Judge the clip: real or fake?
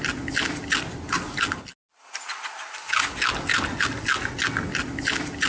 real